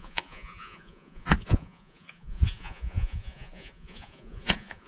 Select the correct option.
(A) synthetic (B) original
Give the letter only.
A